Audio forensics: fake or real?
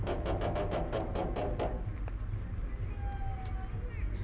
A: real